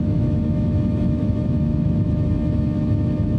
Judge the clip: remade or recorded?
remade